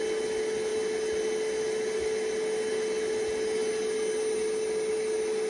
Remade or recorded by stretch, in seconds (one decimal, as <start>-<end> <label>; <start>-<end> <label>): 0.0-5.5 recorded